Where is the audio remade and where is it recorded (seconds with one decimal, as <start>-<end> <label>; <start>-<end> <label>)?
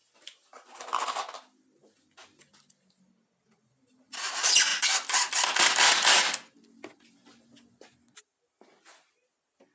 0.0-9.7 recorded